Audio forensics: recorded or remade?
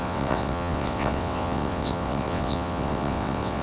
remade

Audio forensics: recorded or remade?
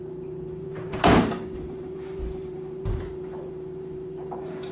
remade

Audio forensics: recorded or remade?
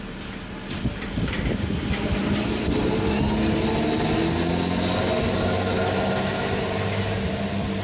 recorded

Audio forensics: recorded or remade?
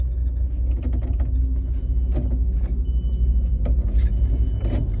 recorded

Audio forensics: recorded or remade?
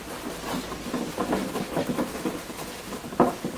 recorded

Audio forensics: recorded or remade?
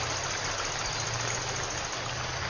recorded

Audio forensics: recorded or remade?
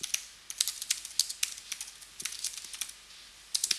recorded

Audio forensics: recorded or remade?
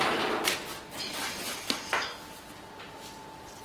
recorded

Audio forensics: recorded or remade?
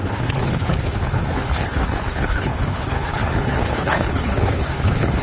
remade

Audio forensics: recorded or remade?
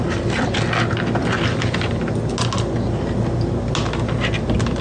recorded